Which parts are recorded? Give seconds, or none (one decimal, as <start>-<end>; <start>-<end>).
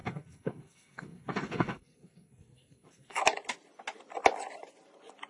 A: 3.2-5.3